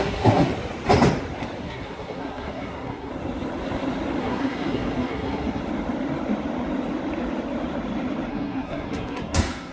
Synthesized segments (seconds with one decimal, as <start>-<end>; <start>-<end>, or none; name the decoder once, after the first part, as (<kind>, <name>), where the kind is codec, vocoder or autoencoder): 0.0-0.5 (codec, SNAC); 1.6-3.1; 4.2-5.6; 8.3-9.7